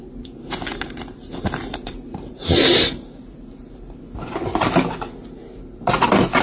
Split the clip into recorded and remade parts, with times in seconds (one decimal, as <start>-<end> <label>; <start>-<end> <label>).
0.0-0.7 recorded; 0.7-4.0 remade; 4.0-6.4 recorded

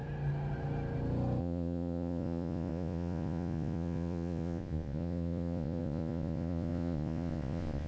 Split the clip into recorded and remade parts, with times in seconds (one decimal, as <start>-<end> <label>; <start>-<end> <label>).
0.0-1.4 recorded; 1.4-7.9 remade